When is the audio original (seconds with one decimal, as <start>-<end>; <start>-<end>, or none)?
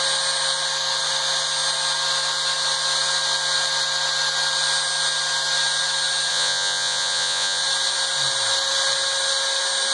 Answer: 0.0-6.3; 7.6-9.9